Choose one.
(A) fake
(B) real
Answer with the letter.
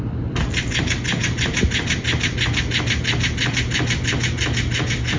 B